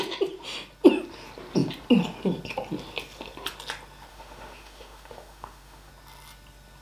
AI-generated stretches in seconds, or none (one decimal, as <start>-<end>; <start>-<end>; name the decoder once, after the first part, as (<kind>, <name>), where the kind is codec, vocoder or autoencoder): 4.1-5.9 (autoencoder, DAC-VAE)